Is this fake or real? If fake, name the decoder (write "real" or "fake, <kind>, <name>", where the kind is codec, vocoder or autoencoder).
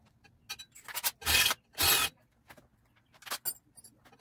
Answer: real